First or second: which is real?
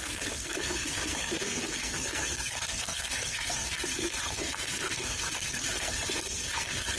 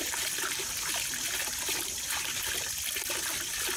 second